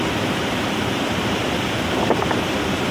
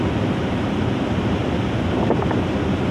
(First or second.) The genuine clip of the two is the second